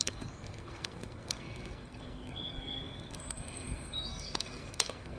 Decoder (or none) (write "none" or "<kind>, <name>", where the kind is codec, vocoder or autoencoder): codec, SNAC